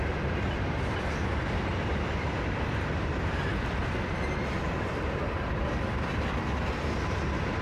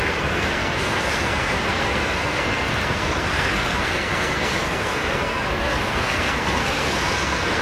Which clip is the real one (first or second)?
first